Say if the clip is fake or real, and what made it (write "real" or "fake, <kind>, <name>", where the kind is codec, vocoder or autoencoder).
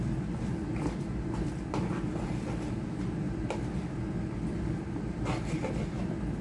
real